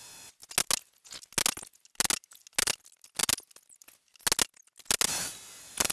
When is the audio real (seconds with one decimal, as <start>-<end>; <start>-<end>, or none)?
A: 0.0-5.9

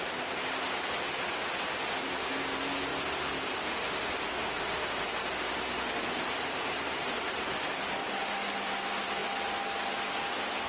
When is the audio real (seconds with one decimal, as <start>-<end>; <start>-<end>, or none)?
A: 0.0-2.9; 4.0-5.1; 7.5-10.7

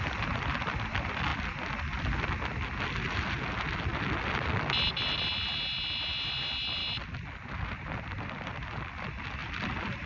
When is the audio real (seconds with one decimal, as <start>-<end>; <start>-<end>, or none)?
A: 1.3-4.9; 6.8-8.2

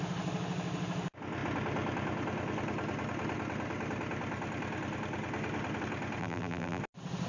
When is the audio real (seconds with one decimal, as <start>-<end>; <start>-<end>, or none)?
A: 0.0-6.2; 6.8-7.3

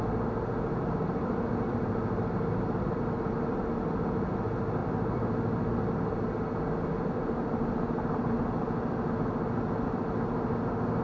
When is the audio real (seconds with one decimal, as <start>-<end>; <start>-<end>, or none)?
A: 0.0-4.8; 5.9-11.0

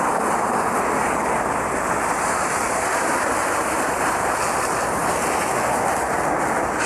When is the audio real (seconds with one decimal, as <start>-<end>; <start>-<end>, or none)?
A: 0.0-6.9

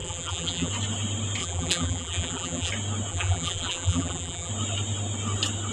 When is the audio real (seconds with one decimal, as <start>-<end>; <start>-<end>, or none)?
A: 0.7-1.4; 2.7-3.1; 4.5-5.7

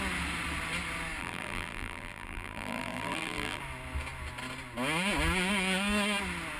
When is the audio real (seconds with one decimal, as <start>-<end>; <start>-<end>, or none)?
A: 0.0-1.2; 3.6-6.6